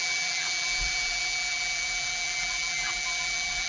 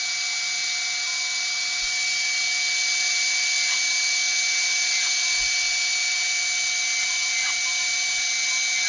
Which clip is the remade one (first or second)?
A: first